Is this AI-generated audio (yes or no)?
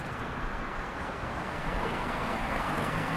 yes